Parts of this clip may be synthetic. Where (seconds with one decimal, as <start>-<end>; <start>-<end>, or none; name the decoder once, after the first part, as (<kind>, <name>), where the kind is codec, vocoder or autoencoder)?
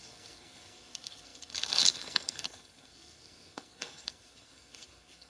0.0-5.3 (codec, SNAC)